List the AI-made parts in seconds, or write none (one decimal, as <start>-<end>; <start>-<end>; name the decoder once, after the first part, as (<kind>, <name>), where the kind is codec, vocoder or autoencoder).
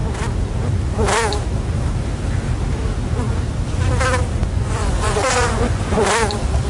4.4-6.0 (vocoder, Vocos)